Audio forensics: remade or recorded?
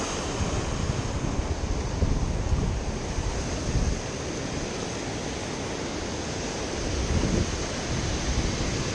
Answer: recorded